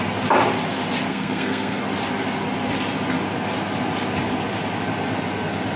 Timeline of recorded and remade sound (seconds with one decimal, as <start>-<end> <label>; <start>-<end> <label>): 0.0-1.1 recorded; 1.1-1.8 remade; 1.8-5.8 recorded